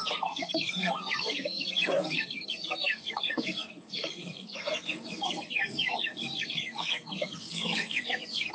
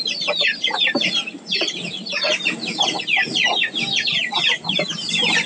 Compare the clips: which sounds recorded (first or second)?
second